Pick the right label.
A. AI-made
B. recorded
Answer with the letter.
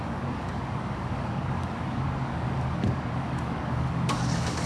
A